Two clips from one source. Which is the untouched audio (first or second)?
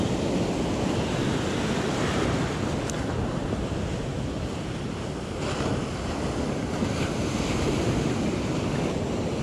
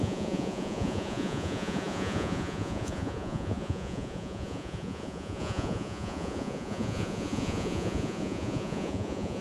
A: first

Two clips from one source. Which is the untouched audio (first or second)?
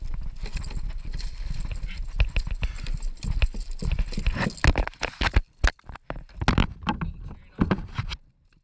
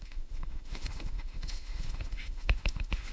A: first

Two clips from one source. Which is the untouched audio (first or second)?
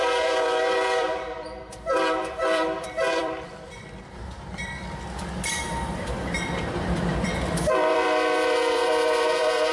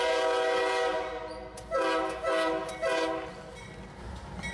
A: second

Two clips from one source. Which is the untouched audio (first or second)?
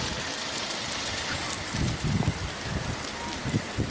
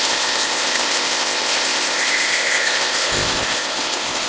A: first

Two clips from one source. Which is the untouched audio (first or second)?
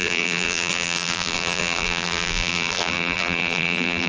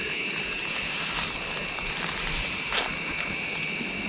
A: second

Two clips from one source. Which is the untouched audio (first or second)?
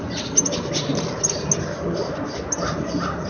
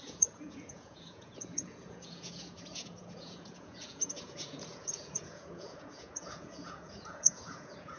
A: first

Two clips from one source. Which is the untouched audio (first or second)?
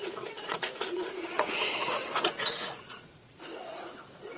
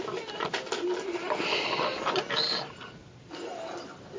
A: second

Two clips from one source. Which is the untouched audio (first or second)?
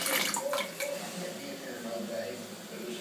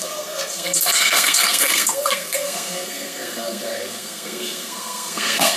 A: first